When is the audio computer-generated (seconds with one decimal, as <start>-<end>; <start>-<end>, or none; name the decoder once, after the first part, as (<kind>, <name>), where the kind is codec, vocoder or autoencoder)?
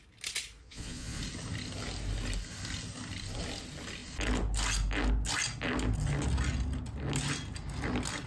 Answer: 0.6-1.2 (vocoder, Vocos)